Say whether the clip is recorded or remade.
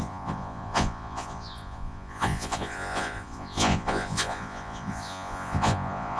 remade